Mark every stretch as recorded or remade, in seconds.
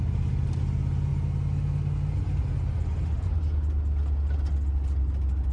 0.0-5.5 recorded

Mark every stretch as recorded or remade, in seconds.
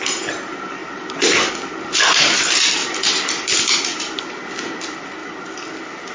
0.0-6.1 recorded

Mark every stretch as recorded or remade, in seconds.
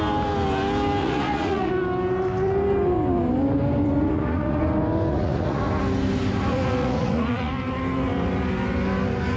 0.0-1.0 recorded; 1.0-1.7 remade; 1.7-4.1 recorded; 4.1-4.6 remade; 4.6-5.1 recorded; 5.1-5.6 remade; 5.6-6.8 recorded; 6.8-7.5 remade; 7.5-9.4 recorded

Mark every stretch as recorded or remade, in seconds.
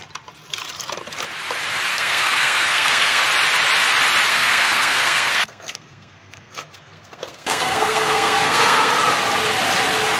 0.0-1.9 recorded; 1.9-3.2 remade; 3.2-4.3 recorded; 4.3-8.9 remade; 8.9-10.2 recorded